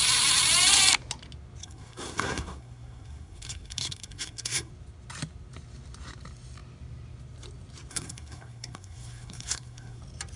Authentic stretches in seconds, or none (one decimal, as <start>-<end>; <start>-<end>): 0.0-1.6; 4.7-7.9; 10.0-10.4